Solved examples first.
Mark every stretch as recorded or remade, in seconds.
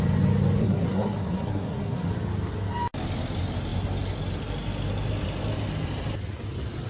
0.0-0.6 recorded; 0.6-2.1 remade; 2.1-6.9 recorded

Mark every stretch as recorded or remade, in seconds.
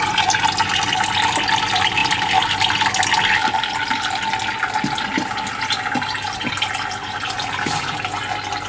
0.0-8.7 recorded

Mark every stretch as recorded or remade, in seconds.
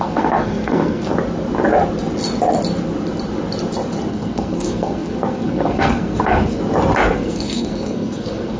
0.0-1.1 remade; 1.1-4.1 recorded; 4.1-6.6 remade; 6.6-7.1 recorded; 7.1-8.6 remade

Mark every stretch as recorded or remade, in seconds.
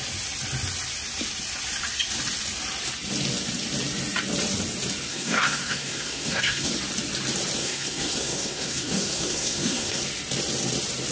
0.0-5.1 recorded; 5.1-6.7 remade; 6.7-7.6 recorded; 7.6-10.0 remade; 10.0-11.1 recorded